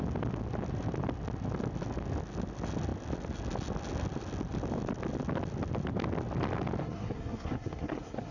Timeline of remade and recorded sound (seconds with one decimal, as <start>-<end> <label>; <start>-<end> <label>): 0.0-6.8 recorded; 6.8-8.3 remade